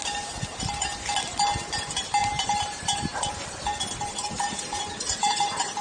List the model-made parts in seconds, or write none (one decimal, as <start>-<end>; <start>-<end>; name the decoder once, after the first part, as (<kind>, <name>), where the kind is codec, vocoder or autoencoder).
2.2-5.8 (vocoder, BigVGAN v2)